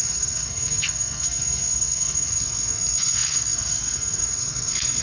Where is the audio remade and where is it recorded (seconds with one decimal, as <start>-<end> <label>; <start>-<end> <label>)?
0.0-5.0 remade